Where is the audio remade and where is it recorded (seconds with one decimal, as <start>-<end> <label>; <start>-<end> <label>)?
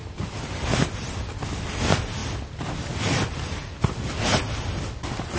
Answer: 0.0-5.4 recorded